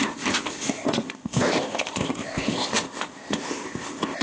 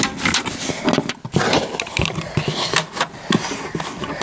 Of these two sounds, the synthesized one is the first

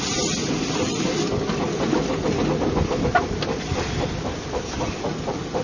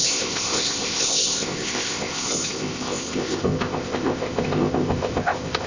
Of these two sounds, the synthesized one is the second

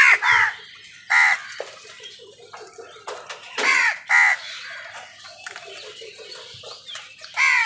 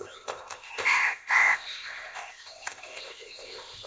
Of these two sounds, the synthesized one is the second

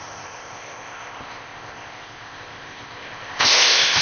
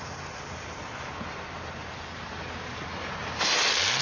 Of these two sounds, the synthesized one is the first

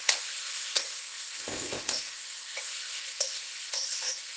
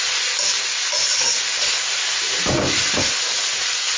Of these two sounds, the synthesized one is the first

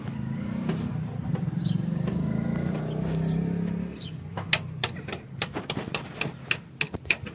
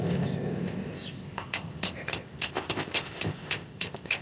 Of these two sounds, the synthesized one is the second